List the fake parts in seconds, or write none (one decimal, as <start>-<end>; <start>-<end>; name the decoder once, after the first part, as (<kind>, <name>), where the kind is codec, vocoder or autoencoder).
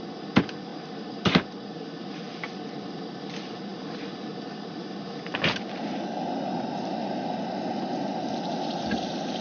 none